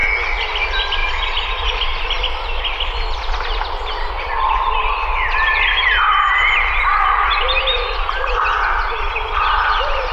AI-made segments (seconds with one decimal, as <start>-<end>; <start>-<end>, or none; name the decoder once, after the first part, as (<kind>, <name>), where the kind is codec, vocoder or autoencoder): 0.6-10.1 (vocoder, BigVGAN v2)

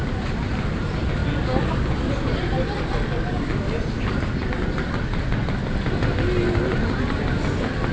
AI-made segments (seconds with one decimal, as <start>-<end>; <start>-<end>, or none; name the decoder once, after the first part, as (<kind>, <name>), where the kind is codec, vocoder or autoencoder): none

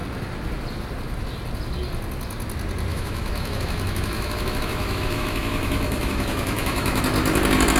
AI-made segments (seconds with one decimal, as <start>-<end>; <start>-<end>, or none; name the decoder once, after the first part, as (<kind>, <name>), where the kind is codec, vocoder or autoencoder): 2.9-7.0 (autoencoder, DAC-VAE)

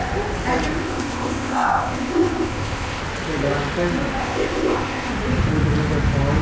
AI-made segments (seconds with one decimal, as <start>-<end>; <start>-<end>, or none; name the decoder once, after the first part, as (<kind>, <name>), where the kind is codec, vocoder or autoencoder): 0.8-3.0 (codec, ZipCodec); 4.2-5.1

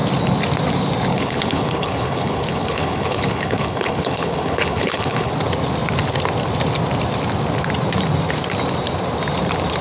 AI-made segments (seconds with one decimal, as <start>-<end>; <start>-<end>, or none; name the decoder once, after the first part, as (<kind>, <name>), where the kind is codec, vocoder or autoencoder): 1.1-5.3 (codec, HILCodec)

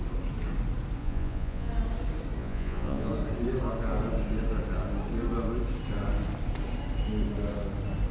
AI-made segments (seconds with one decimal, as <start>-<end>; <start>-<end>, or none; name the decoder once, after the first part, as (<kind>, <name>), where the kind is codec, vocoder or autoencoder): 1.0-1.7 (vocoder, Vocos); 2.4-3.1